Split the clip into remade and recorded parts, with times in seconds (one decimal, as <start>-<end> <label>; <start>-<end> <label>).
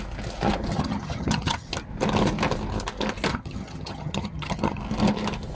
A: 0.0-0.7 recorded; 0.7-1.7 remade; 1.7-3.3 recorded; 3.3-4.8 remade; 4.8-5.5 recorded